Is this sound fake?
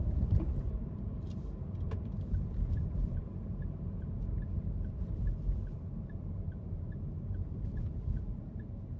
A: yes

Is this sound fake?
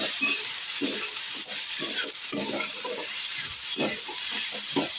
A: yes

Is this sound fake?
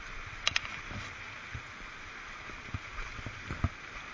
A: no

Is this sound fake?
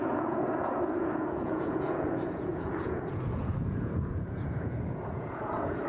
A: yes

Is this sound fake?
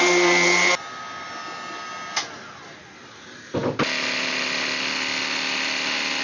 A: no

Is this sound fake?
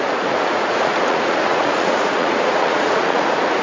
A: yes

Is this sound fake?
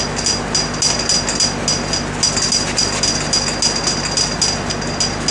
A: no